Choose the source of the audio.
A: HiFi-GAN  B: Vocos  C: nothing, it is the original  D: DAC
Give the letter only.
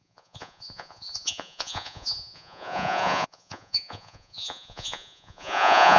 B